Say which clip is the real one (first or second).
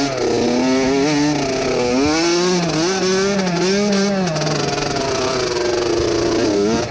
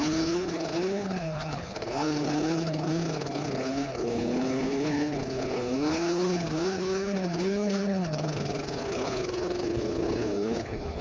first